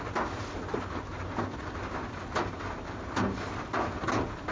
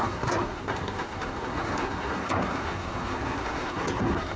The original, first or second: first